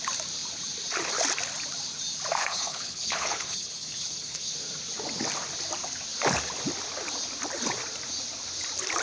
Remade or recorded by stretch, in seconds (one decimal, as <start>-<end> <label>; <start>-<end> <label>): 0.0-2.4 recorded; 2.4-4.5 remade; 4.5-9.0 recorded